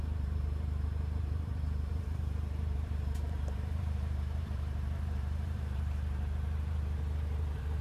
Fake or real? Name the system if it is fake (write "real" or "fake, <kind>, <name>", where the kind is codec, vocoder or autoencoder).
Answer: fake, vocoder, BigVGAN v2